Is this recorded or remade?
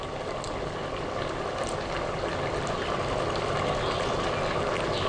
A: recorded